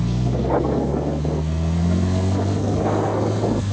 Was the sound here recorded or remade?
remade